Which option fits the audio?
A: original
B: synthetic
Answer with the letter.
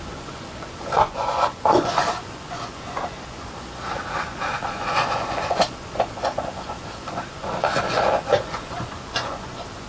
B